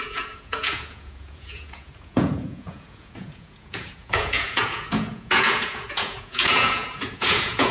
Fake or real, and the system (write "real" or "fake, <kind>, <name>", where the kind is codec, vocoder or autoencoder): fake, vocoder, Vocos